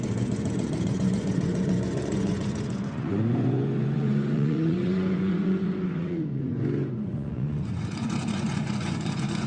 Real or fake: fake